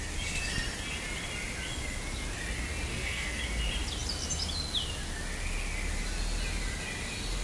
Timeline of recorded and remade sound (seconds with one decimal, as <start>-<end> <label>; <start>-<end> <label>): 0.0-2.9 recorded; 2.9-3.4 remade; 3.4-7.4 recorded